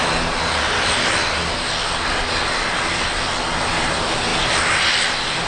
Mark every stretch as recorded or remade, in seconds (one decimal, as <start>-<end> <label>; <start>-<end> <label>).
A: 0.0-4.3 recorded; 4.3-5.5 remade